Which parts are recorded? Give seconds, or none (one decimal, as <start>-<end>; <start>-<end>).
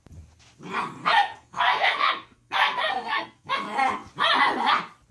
0.0-1.0; 3.5-5.1